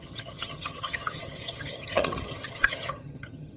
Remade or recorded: remade